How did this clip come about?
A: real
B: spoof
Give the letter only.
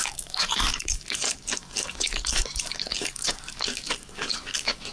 B